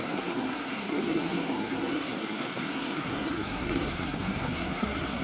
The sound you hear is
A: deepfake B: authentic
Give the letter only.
A